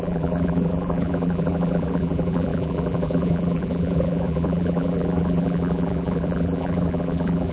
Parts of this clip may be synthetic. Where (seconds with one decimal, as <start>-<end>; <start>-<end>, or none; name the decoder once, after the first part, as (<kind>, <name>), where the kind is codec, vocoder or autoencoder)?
0.0-7.5 (vocoder, BigVGAN v2)